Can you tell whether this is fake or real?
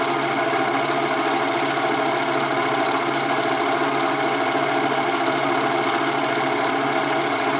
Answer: real